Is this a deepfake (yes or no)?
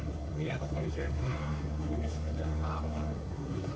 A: yes